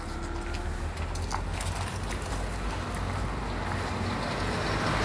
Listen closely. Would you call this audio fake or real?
real